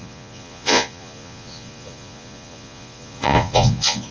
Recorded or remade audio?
remade